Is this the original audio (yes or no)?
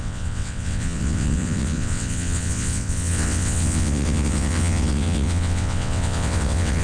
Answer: no